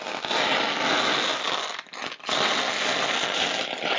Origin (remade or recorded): recorded